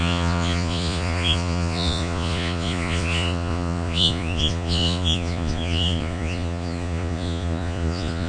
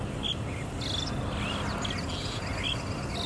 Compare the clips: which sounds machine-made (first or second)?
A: first